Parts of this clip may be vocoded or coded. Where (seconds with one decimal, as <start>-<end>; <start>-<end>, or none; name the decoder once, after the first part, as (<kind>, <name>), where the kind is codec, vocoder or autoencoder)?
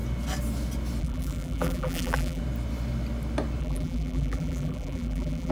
1.0-2.4 (vocoder, BigVGAN v2); 3.6-5.5